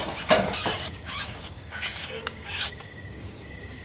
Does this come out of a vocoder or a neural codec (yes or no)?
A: yes